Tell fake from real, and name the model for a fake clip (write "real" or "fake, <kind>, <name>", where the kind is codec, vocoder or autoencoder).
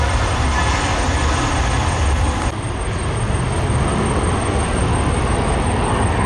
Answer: real